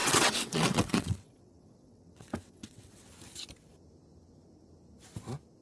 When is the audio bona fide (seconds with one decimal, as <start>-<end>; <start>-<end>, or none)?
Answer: 3.1-5.6